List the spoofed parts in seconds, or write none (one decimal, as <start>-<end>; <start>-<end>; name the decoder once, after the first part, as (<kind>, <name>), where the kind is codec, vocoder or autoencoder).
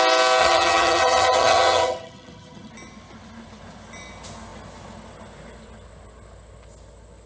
0.4-2.7 (vocoder, HiFi-GAN)